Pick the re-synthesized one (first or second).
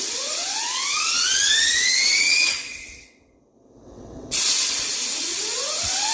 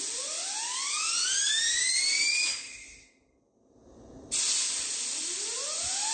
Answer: first